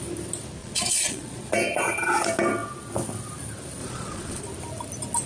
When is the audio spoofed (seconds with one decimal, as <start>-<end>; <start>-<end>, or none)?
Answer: 0.6-1.5; 3.8-4.4